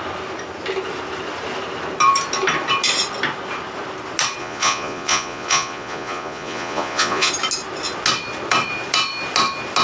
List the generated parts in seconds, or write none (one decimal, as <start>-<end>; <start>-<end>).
4.4-7.3